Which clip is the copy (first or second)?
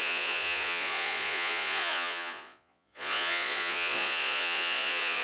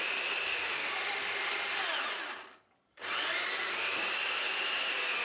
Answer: first